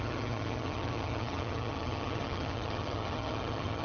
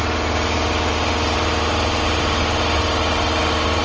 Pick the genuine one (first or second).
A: second